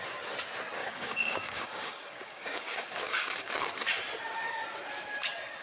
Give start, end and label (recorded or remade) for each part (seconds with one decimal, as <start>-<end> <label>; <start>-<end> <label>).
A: 0.0-0.8 recorded; 0.8-3.5 remade; 3.5-5.6 recorded